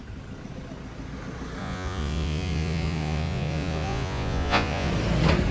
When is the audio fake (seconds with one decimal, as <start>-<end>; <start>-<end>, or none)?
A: 1.6-4.9